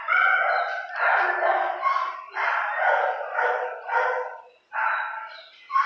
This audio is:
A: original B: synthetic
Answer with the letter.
A